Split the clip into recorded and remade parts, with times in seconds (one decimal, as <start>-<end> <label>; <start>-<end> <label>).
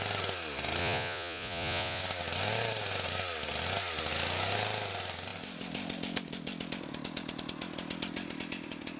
0.0-0.8 recorded; 0.8-2.0 remade; 2.0-9.0 recorded